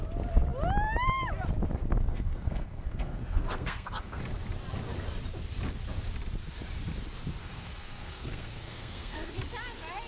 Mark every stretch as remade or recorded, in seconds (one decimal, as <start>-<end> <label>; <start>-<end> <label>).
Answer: 0.0-2.1 recorded; 2.1-4.2 remade; 4.2-7.4 recorded; 7.4-9.3 remade; 9.3-10.1 recorded